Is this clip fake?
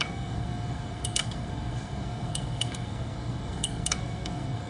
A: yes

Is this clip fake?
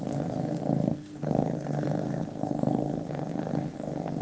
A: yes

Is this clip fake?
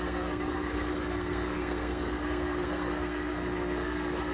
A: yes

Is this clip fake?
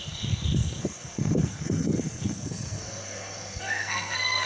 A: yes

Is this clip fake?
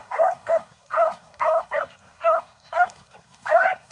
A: yes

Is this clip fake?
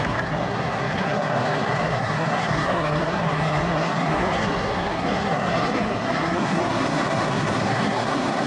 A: yes